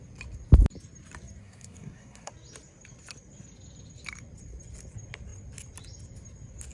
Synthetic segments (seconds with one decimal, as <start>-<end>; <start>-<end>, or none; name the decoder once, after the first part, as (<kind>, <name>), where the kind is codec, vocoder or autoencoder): 1.4-2.3 (codec, SNAC)